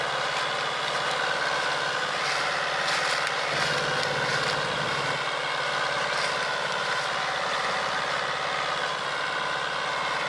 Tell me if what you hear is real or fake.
real